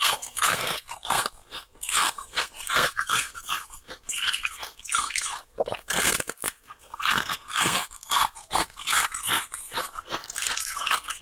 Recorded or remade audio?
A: remade